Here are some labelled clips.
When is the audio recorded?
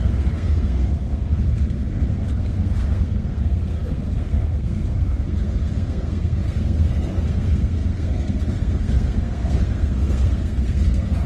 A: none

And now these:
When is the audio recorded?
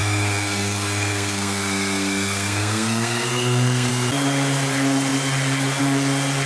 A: 3.9-6.5